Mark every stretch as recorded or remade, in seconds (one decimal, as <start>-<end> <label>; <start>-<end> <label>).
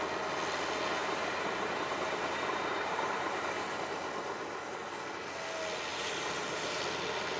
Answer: 0.0-1.0 recorded; 1.0-3.9 remade; 3.9-5.9 recorded; 5.9-6.8 remade; 6.8-7.4 recorded